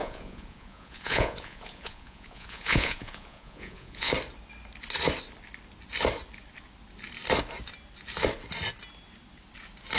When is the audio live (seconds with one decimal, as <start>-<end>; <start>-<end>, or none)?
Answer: 4.1-10.0